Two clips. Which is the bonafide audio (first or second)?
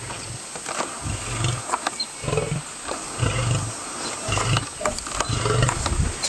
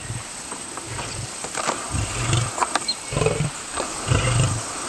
first